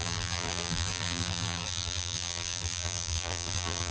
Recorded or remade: remade